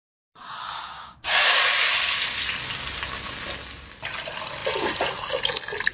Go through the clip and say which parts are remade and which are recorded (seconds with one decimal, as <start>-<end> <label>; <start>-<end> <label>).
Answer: 0.0-0.4 recorded; 0.4-1.6 remade; 1.6-5.9 recorded